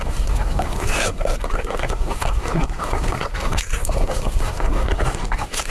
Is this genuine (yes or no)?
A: no